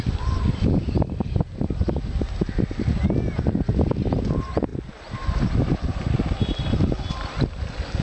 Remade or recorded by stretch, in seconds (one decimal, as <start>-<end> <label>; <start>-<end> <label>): 0.0-8.0 recorded